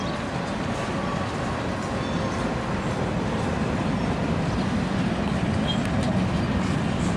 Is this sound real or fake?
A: real